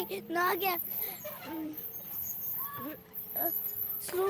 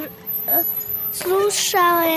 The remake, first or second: first